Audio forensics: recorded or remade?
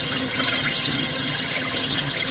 remade